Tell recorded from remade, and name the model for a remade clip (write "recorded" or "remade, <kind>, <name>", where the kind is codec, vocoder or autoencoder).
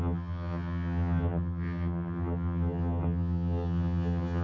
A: remade, vocoder, HiFi-GAN